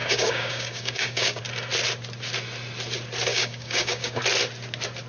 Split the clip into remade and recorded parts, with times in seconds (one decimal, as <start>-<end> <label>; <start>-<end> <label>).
0.0-1.4 remade; 1.4-3.3 recorded; 3.3-4.2 remade; 4.2-5.1 recorded